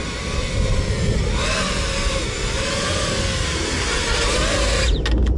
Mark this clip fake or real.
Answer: real